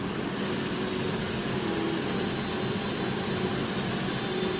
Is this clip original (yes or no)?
yes